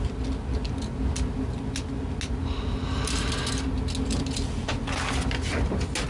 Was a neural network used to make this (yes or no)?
no